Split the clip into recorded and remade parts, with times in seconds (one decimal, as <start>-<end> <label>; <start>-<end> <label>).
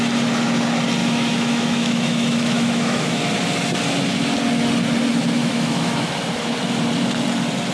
0.0-1.0 recorded; 1.0-3.2 remade; 3.2-5.4 recorded; 5.4-6.1 remade; 6.1-7.7 recorded